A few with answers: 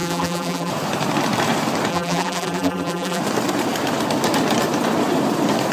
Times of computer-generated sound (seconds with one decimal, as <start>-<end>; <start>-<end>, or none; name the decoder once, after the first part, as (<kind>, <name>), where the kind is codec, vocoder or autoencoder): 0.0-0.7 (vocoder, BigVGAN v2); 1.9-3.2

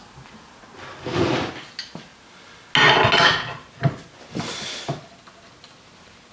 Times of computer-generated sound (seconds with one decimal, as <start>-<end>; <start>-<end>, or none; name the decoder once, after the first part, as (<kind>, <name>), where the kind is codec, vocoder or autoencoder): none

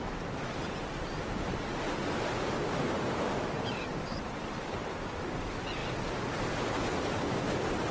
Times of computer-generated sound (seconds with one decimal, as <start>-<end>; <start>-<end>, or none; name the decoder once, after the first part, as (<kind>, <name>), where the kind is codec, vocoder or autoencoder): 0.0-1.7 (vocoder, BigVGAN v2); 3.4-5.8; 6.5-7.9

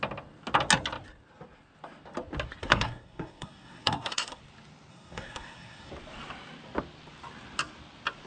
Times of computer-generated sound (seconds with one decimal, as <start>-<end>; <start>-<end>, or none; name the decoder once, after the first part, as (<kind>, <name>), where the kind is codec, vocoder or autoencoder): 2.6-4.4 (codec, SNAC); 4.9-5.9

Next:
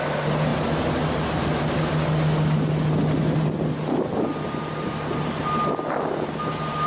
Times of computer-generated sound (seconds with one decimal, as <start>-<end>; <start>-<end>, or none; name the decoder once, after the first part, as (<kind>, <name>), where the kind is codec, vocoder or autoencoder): none